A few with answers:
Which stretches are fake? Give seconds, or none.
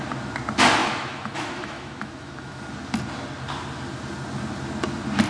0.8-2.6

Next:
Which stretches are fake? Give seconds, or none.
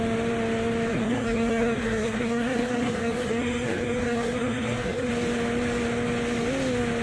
0.9-5.1